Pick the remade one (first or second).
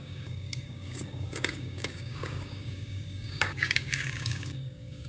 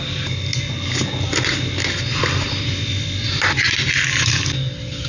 first